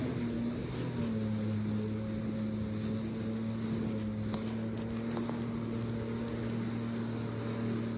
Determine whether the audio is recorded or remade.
recorded